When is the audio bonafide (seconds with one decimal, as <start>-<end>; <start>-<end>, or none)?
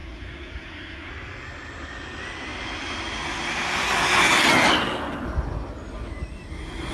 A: 1.1-6.9